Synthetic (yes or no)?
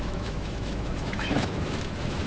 yes